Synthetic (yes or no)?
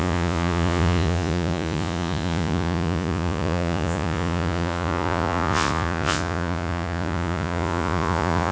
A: yes